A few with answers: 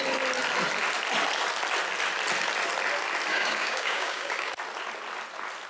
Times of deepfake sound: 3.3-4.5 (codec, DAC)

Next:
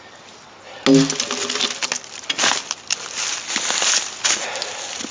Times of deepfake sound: none

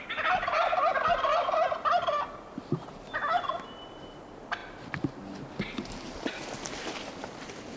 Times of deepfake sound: none

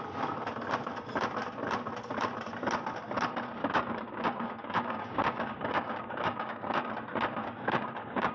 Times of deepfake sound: 3.6-6.9 (codec, DAC); 7.4-8.3

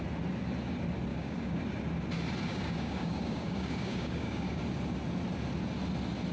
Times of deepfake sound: 1.1-1.6 (codec, DAC); 2.5-4.6

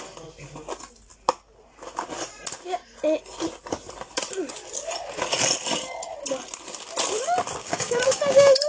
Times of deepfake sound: 7.6-8.7 (codec, DAC)

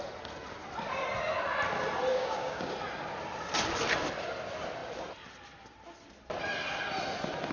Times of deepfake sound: 2.1-2.7 (codec, DAC)